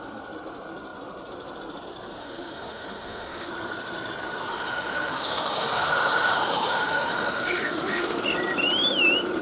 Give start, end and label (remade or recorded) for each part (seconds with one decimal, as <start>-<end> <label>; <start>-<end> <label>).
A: 0.0-2.2 recorded; 2.2-3.5 remade; 3.5-4.5 recorded; 4.5-8.2 remade; 8.2-9.4 recorded